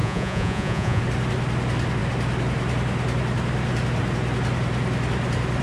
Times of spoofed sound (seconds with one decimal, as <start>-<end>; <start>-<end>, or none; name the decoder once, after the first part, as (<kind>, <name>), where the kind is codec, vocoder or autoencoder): 0.0-1.0 (vocoder, Vocos)